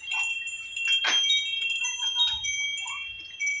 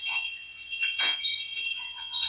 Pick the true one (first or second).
first